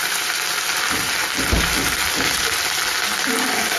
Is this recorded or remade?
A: recorded